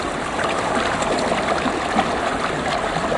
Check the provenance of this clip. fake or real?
real